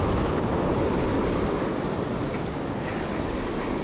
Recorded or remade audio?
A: recorded